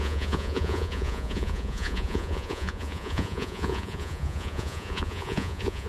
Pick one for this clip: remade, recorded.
remade